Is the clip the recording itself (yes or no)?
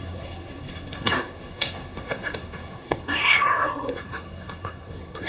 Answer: no